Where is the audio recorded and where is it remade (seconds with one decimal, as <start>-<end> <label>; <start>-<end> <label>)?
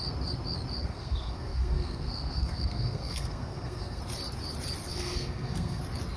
0.0-0.8 recorded; 0.8-4.0 remade; 4.0-4.9 recorded; 4.9-5.8 remade; 5.8-6.2 recorded